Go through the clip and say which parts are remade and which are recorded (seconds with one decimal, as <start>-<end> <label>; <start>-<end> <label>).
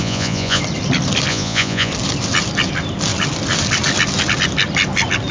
0.0-0.6 remade; 0.6-1.3 recorded; 1.3-1.9 remade; 1.9-5.3 recorded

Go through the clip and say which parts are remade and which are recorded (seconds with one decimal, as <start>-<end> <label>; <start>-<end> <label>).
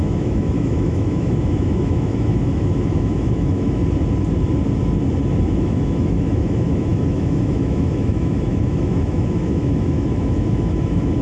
0.0-3.8 remade; 3.8-5.4 recorded; 5.4-11.2 remade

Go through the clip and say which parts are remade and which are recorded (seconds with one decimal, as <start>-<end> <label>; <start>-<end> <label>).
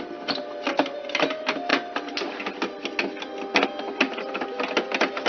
0.0-5.3 recorded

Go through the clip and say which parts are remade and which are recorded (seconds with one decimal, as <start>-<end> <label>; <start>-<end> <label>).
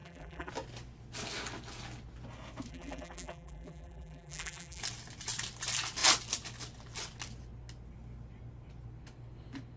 0.0-0.5 remade; 0.5-2.7 recorded; 2.7-4.8 remade; 4.8-9.8 recorded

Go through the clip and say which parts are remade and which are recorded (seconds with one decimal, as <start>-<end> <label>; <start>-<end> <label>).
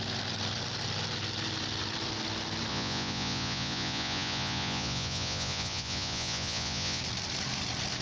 0.0-2.7 recorded; 2.7-7.0 remade; 7.0-8.0 recorded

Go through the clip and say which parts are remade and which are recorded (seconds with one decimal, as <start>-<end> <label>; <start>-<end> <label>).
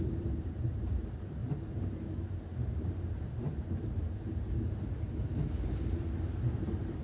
0.0-7.0 remade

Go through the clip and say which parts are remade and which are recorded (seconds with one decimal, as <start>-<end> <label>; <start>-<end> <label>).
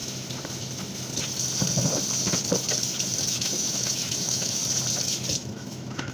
0.0-3.2 recorded; 3.2-4.6 remade; 4.6-5.3 recorded; 5.3-6.1 remade